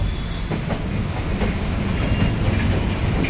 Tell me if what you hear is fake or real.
real